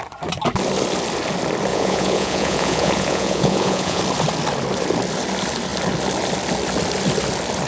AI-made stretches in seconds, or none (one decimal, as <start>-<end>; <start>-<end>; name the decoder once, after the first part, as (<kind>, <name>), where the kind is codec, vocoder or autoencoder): 1.7-4.0 (vocoder, Vocos)